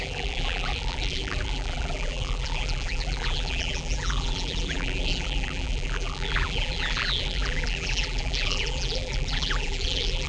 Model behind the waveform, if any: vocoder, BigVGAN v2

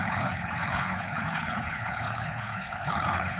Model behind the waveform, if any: codec, HILCodec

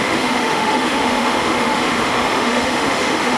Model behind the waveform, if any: autoencoder, DAC-VAE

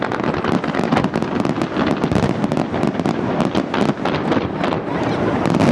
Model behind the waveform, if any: none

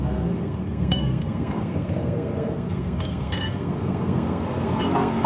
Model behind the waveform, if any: codec, SNAC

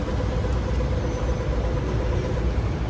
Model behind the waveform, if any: none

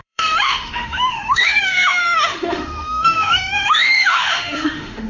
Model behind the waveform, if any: autoencoder, DAC-VAE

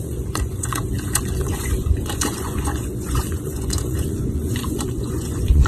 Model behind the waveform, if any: vocoder, Vocos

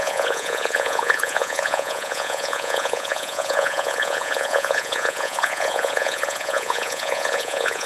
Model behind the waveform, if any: vocoder, Vocos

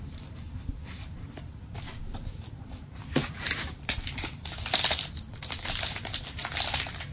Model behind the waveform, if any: vocoder, BigVGAN v2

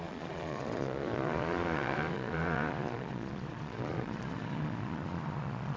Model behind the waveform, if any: vocoder, Vocos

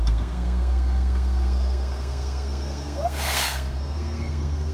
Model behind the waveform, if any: codec, SNAC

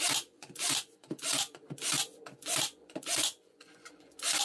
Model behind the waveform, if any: vocoder, Vocos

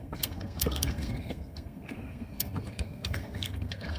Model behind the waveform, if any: codec, SNAC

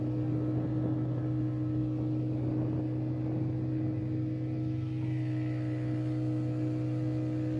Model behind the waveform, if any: none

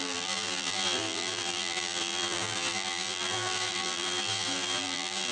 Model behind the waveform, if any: vocoder, BigVGAN v2